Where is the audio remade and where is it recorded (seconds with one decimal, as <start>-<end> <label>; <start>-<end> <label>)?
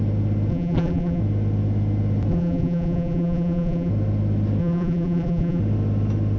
0.0-0.5 recorded; 0.5-1.2 remade; 1.2-2.3 recorded; 2.3-3.9 remade; 3.9-4.6 recorded; 4.6-5.6 remade; 5.6-6.4 recorded